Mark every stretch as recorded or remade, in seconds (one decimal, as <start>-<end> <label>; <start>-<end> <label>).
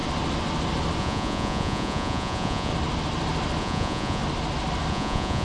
0.0-1.0 recorded; 1.0-2.7 remade; 2.7-3.6 recorded; 3.6-4.2 remade; 4.2-4.9 recorded; 4.9-5.4 remade